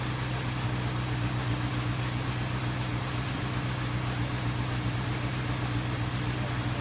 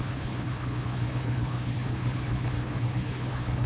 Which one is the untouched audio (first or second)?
first